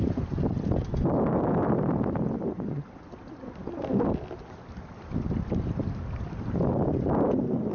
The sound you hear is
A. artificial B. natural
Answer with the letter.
B